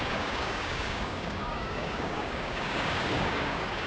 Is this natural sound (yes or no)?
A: no